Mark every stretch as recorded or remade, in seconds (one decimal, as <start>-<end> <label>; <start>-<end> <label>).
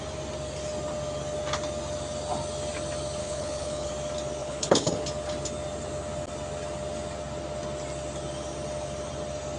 0.0-3.2 recorded; 3.2-3.9 remade; 3.9-4.4 recorded; 4.4-4.9 remade; 4.9-9.6 recorded